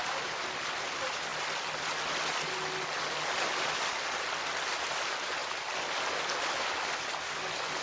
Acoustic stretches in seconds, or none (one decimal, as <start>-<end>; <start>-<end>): 0.0-7.8